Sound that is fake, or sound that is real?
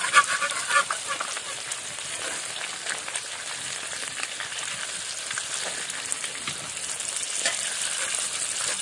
real